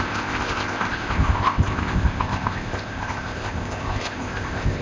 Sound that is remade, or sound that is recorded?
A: remade